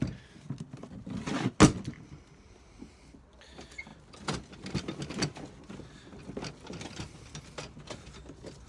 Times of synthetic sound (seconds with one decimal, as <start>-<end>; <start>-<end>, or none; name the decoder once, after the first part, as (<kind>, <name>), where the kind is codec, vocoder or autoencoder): none